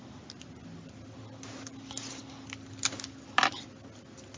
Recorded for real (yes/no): yes